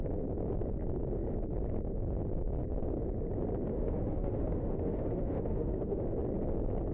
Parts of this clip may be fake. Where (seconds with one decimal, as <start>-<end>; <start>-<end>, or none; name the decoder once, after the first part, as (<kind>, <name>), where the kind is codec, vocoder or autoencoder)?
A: 3.7-6.0 (autoencoder, DAC-VAE)